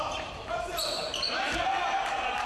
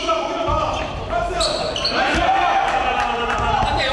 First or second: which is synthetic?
first